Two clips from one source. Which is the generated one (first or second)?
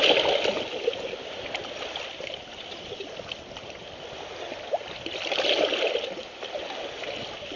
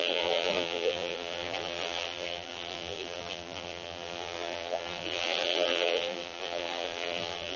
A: second